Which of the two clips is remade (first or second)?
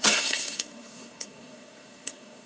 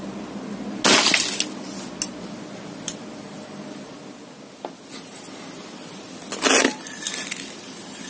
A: first